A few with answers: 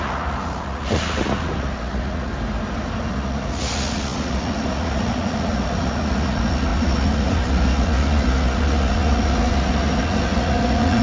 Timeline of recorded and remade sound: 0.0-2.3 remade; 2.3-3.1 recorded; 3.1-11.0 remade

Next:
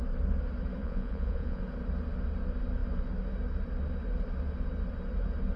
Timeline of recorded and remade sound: 0.0-0.8 recorded; 0.8-1.6 remade; 1.6-5.6 recorded

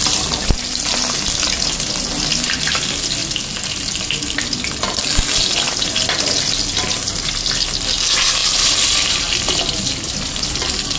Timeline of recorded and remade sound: 0.0-11.0 recorded

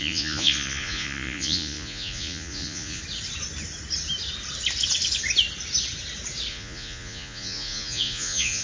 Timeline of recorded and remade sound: 0.0-3.0 remade; 3.0-6.5 recorded; 6.5-8.6 remade